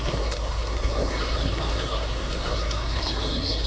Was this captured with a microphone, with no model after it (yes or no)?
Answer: no